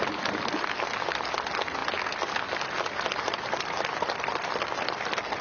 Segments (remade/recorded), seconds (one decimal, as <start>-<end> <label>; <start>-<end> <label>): 0.0-5.4 recorded